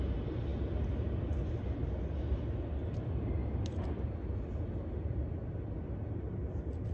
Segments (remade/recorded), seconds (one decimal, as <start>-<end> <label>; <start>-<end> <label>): 0.0-6.9 recorded